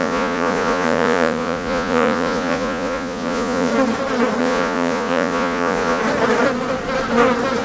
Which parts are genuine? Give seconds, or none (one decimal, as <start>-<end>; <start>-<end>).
3.7-4.4; 6.0-7.6